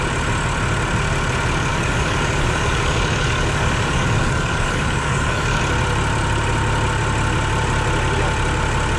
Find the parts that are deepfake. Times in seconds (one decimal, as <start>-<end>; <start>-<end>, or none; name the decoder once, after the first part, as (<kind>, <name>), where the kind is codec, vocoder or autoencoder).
1.7-5.6 (codec, DAC)